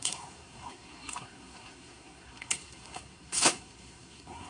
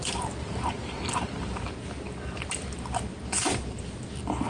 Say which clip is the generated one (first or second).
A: first